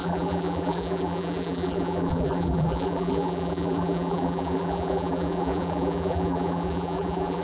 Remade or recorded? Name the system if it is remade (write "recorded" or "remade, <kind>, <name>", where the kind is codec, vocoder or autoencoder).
remade, vocoder, BigVGAN v2